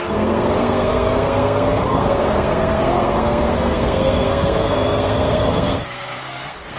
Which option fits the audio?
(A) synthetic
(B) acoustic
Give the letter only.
A